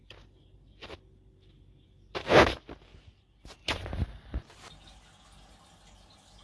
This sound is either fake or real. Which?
real